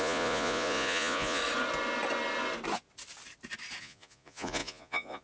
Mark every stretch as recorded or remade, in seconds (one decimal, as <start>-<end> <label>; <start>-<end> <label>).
0.0-1.4 remade; 1.4-3.8 recorded; 3.8-5.2 remade